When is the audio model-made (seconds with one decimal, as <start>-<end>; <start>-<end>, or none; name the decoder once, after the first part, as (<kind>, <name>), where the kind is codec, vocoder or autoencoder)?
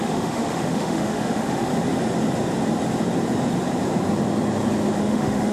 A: 0.0-1.7 (autoencoder, DAC-VAE); 5.0-5.5